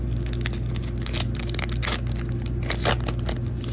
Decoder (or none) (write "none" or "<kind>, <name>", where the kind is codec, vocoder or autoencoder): none